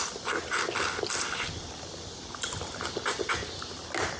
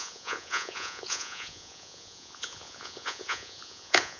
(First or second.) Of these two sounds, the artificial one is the second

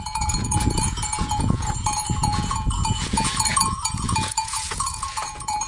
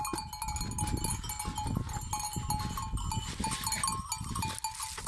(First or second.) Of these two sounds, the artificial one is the first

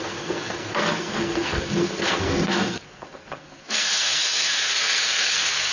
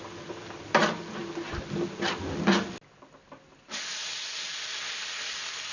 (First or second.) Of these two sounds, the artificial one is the first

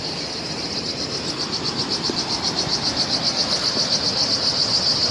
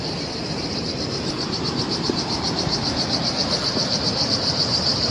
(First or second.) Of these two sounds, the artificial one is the second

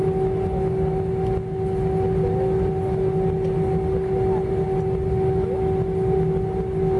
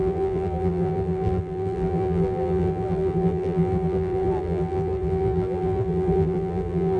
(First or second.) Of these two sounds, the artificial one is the second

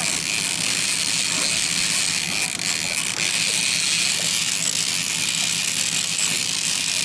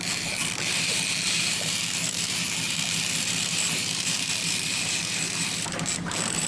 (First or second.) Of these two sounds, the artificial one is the second